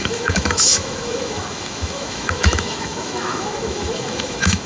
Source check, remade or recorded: remade